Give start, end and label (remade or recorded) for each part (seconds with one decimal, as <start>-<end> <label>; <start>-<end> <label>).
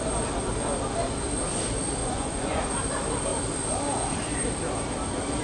0.0-2.0 recorded; 2.0-2.6 remade; 2.6-5.4 recorded